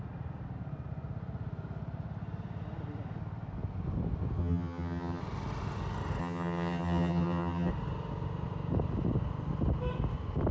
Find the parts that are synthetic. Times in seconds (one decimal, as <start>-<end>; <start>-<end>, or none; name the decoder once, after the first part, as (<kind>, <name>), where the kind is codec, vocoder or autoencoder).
4.4-5.2 (vocoder, HiFi-GAN); 6.2-7.7